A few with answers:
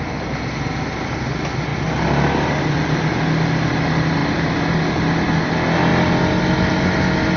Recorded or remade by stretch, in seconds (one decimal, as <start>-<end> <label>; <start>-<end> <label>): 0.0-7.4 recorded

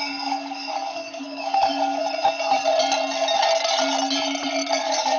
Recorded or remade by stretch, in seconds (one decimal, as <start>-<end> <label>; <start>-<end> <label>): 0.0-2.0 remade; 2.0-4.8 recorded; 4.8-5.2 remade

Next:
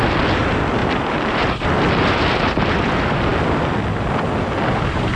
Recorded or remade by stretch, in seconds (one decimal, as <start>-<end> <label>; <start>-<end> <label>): 0.0-0.8 recorded; 0.8-1.6 remade; 1.6-5.2 recorded

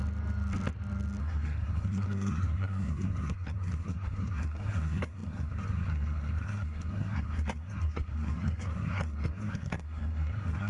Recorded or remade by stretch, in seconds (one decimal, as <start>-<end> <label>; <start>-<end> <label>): 0.0-1.2 recorded; 1.2-10.7 remade

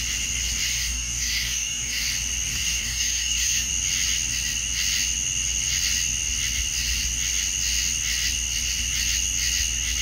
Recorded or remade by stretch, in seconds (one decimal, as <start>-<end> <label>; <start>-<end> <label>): 0.0-0.7 recorded; 0.7-2.1 remade; 2.1-2.5 recorded; 2.5-3.7 remade; 3.7-10.0 recorded

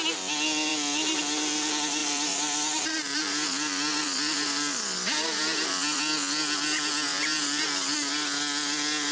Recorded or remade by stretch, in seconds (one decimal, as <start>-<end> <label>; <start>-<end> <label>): 0.0-0.7 recorded; 0.7-1.2 remade; 1.2-2.0 recorded; 2.0-6.0 remade; 6.0-7.1 recorded; 7.1-7.6 remade; 7.6-9.1 recorded